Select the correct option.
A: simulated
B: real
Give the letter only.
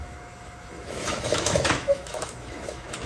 A